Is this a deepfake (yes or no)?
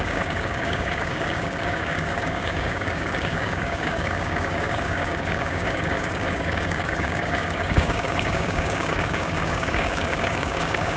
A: yes